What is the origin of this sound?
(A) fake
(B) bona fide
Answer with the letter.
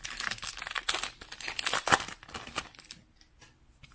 B